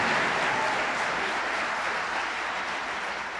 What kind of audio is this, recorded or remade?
recorded